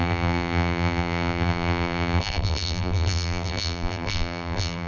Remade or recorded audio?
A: remade